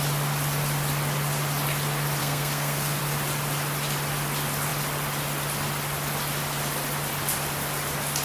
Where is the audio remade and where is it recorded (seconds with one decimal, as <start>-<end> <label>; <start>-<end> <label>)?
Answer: 0.0-2.2 recorded; 2.2-3.0 remade; 3.0-8.2 recorded